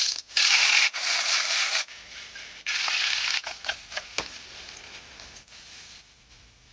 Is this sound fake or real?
real